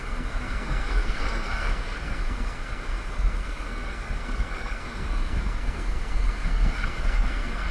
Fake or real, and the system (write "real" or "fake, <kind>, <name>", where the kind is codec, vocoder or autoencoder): fake, codec, SNAC